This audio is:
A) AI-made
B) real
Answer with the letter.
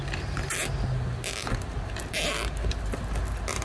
B